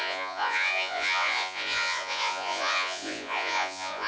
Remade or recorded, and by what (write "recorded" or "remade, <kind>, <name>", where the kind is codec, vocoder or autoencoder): remade, vocoder, Vocos